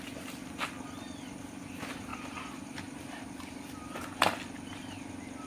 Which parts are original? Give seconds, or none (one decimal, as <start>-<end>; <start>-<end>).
0.0-5.5